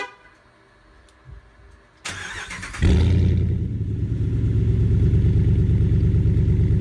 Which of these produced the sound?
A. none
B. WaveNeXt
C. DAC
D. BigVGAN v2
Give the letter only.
A